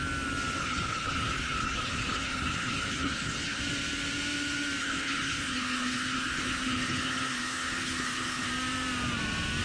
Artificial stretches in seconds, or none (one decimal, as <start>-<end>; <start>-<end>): 0.6-3.6; 4.8-8.5